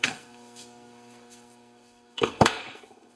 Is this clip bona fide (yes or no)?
no